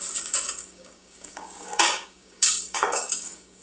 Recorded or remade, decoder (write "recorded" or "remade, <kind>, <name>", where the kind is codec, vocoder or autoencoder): remade, codec, DAC